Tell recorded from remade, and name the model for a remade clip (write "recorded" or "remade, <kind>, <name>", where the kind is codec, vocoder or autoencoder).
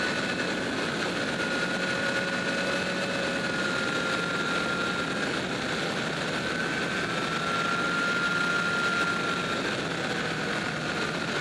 recorded